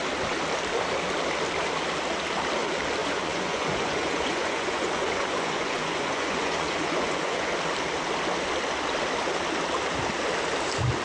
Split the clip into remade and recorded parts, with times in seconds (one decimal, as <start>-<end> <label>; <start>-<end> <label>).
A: 0.0-3.0 recorded; 3.0-7.5 remade; 7.5-11.0 recorded

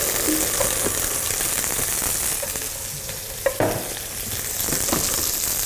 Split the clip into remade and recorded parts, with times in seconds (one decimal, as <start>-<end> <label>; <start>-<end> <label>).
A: 0.0-5.7 recorded